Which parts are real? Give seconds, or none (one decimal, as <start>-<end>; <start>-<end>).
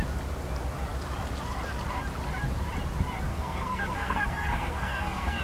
0.0-3.3